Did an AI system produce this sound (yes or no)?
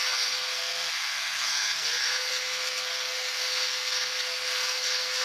yes